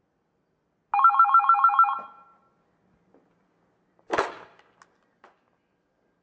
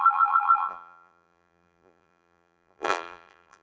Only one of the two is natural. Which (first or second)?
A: first